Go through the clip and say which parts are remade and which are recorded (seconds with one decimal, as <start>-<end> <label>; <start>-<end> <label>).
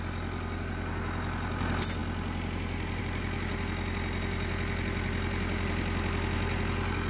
0.0-7.1 recorded